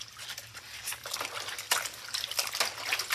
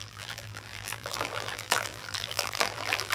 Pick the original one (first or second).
first